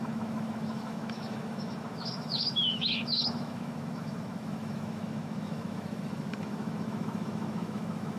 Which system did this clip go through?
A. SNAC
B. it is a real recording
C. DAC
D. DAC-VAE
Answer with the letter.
D